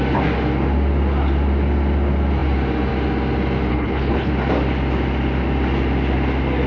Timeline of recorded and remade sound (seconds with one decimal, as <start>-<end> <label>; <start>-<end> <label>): 0.0-3.7 recorded; 3.7-4.3 remade; 4.3-6.7 recorded